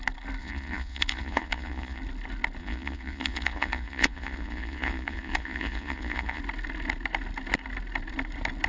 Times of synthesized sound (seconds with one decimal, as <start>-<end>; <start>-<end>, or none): 0.4-2.0; 2.6-6.4